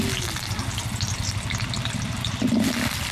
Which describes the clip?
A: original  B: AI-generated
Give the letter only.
A